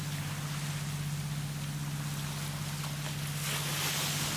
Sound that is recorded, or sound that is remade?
recorded